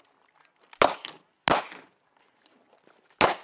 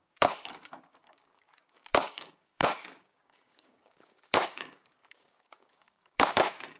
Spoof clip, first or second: second